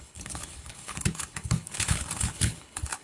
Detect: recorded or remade remade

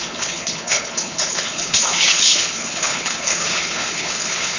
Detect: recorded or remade remade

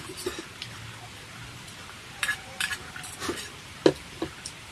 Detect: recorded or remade recorded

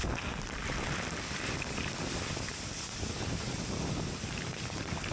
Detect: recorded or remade recorded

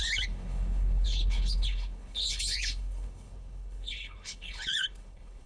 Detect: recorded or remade remade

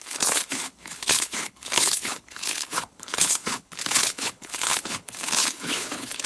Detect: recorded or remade remade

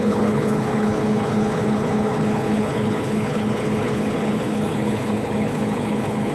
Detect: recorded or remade remade